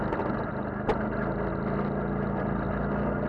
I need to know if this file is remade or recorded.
recorded